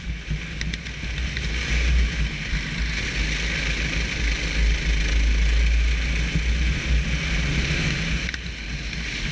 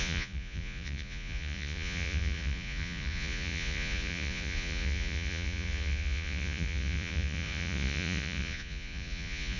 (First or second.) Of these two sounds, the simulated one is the second